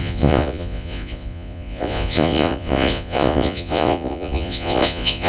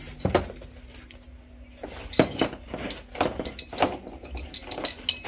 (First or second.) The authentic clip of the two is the second